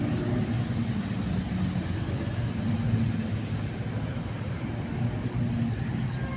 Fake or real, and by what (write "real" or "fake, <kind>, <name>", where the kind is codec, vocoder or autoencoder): real